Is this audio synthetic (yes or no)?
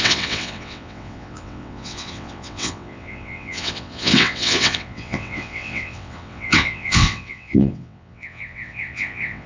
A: yes